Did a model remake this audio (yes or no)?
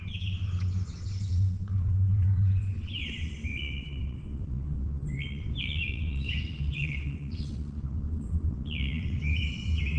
yes